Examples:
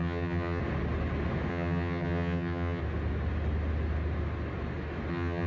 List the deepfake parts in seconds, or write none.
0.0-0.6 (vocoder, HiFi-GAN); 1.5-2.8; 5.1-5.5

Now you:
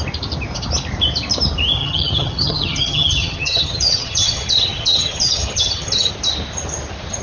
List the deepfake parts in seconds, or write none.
1.8-6.1 (vocoder, HiFi-GAN)

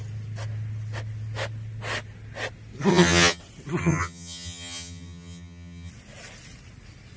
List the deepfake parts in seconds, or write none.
2.9-3.4 (vocoder, HiFi-GAN); 3.8-5.9

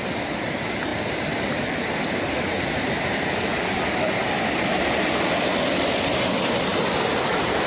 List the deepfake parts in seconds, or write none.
none

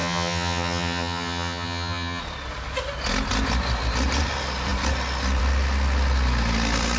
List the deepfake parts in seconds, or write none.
0.0-2.2 (vocoder, HiFi-GAN)

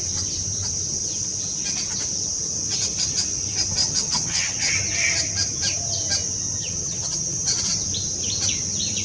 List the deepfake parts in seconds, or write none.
3.8-4.7 (vocoder, HiFi-GAN); 6.6-7.6

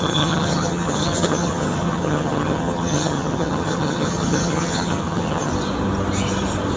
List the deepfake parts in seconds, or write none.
0.0-5.5 (vocoder, HiFi-GAN)

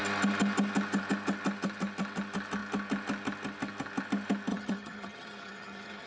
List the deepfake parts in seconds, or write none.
4.5-6.1 (vocoder, HiFi-GAN)